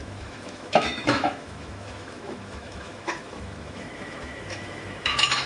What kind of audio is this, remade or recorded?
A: remade